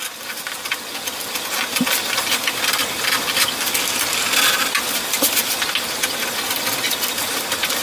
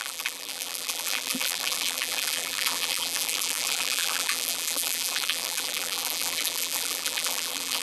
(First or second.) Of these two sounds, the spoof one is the second